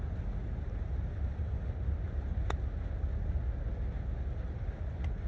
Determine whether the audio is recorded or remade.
recorded